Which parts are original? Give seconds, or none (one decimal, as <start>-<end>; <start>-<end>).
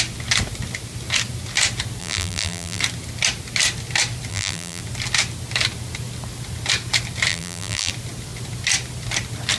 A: 0.0-2.0; 2.8-4.3; 4.8-7.3; 7.9-9.6